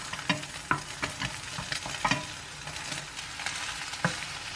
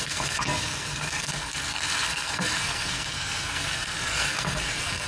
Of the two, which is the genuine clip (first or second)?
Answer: first